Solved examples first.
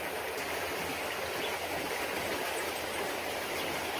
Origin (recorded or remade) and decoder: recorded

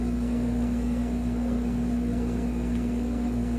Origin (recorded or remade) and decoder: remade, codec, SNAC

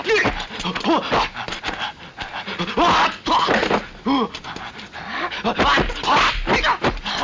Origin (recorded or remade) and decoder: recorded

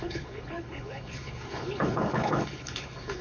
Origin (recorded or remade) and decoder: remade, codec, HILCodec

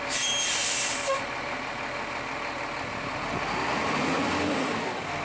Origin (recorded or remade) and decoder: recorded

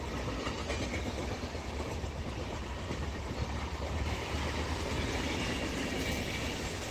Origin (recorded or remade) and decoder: recorded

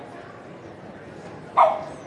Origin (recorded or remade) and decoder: recorded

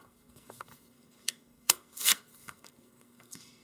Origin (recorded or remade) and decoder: remade, codec, SNAC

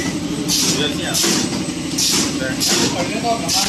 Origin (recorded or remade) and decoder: recorded